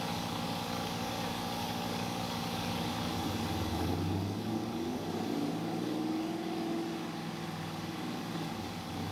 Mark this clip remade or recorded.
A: remade